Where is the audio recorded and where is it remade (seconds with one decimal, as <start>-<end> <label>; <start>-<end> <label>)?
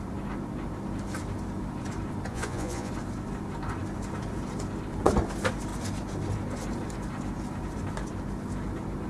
0.0-2.3 recorded; 2.3-2.9 remade; 2.9-9.1 recorded